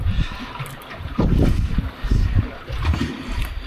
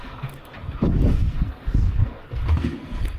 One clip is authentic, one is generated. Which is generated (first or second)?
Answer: second